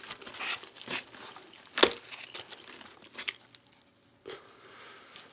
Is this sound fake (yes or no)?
no